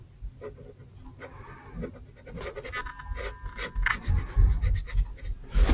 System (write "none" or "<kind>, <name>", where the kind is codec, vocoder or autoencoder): none